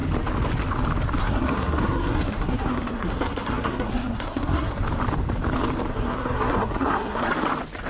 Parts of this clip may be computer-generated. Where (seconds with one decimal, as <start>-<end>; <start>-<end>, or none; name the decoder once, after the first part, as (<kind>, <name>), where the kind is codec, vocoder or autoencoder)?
1.2-4.8 (codec, SNAC); 5.9-7.3